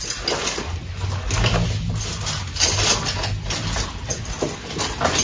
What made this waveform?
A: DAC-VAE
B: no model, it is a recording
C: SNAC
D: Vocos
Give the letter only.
B